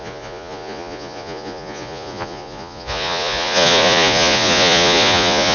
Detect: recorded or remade remade